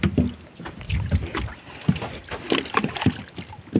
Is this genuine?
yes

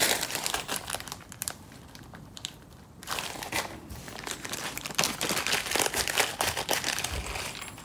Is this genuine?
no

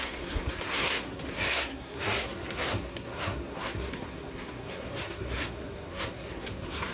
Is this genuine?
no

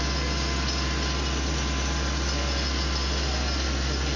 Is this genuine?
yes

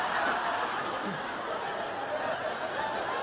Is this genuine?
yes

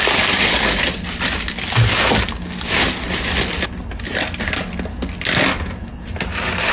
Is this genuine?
yes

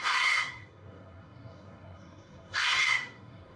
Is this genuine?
no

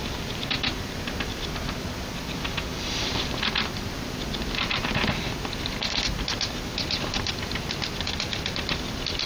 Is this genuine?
no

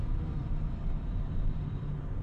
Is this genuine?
no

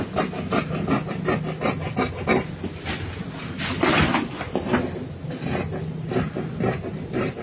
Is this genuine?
yes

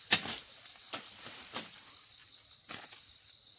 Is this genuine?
yes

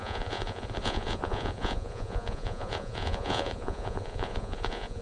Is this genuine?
no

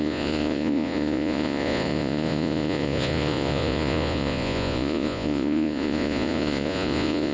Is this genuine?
no